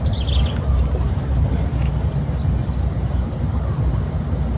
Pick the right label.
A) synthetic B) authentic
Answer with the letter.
B